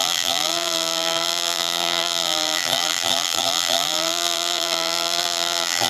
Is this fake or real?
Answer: fake